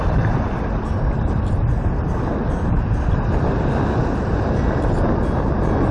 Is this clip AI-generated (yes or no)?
no